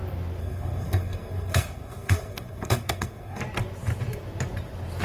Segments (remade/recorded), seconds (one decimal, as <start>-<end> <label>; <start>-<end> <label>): 0.0-0.4 recorded; 0.4-3.4 remade; 3.4-5.0 recorded